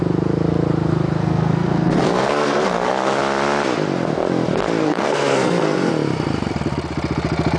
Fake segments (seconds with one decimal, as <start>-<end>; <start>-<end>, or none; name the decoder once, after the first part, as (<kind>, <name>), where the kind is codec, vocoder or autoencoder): 1.2-3.2 (codec, SNAC); 4.8-5.9